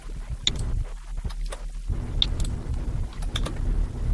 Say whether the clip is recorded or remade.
recorded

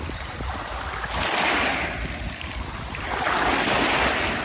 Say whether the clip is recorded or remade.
remade